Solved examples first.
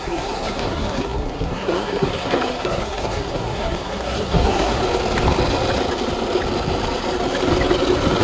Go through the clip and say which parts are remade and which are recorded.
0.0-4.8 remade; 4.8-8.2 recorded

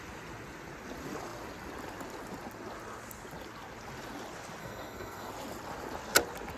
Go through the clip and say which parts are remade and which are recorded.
0.0-4.6 recorded; 4.6-5.3 remade; 5.3-6.6 recorded

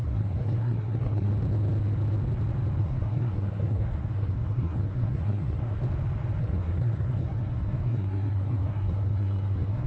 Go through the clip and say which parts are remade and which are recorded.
0.0-1.3 remade; 1.3-2.8 recorded; 2.8-5.8 remade; 5.8-6.4 recorded; 6.4-9.9 remade

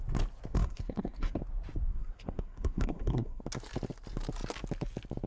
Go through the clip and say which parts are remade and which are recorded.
0.0-0.6 recorded; 0.6-1.4 remade; 1.4-1.9 recorded; 1.9-3.4 remade; 3.4-5.3 recorded

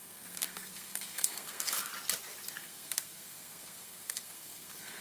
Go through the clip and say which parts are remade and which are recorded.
0.0-1.9 remade; 1.9-2.6 recorded; 2.6-5.0 remade